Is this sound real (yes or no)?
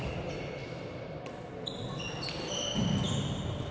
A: yes